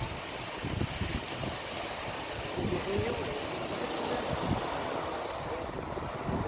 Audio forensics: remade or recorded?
recorded